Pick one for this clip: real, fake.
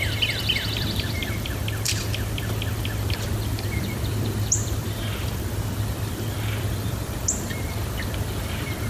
fake